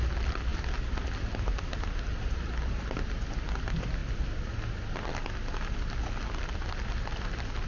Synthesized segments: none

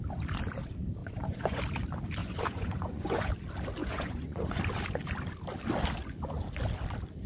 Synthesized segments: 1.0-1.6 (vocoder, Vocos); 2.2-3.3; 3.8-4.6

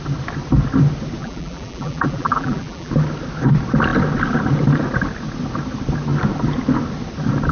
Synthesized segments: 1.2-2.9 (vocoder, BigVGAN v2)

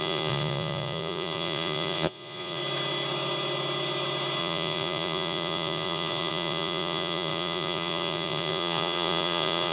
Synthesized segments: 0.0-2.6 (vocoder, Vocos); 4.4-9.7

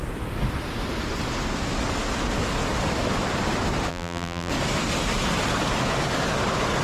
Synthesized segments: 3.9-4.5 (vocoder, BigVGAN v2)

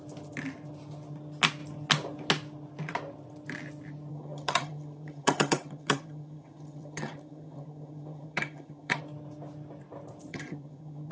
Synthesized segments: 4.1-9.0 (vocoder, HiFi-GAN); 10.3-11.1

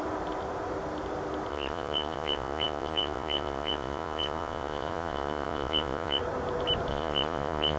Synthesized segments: 1.5-6.2 (vocoder, Vocos); 6.9-7.8

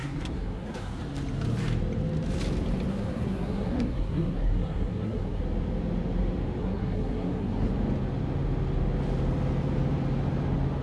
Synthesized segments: 0.0-1.0 (codec, SNAC); 2.9-5.4; 6.6-7.7